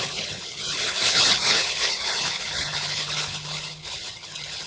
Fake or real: fake